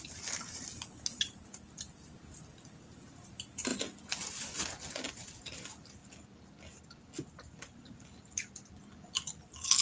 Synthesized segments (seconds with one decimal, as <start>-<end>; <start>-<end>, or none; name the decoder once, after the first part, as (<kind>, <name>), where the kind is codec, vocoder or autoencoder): none